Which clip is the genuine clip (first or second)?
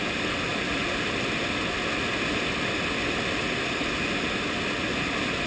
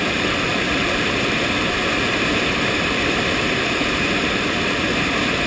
first